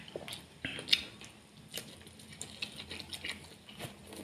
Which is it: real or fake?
real